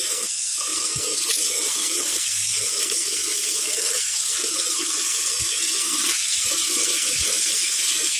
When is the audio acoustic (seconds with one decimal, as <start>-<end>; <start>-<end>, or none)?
none